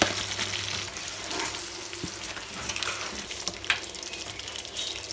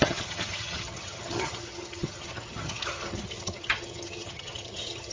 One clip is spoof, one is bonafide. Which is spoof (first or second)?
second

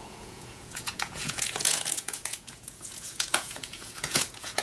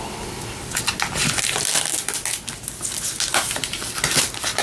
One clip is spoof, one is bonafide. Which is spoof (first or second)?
first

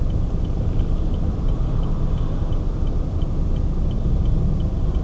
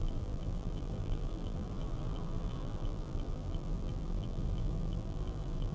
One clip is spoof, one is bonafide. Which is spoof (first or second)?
second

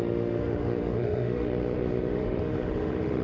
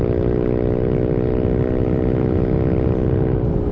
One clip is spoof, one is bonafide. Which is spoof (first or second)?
first